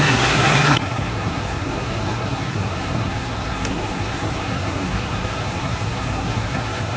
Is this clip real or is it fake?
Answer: fake